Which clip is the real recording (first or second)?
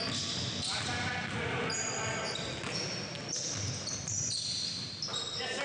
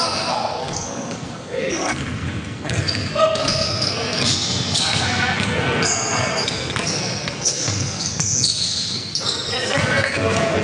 first